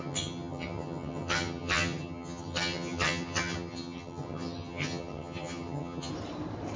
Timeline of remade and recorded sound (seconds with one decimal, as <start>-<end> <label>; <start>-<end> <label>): 0.0-6.1 remade; 6.1-6.8 recorded